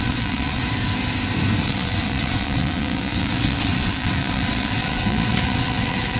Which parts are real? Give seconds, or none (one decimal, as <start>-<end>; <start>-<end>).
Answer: 0.6-1.6